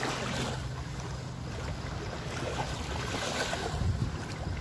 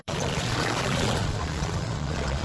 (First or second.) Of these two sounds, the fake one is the second